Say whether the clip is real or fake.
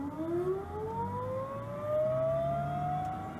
real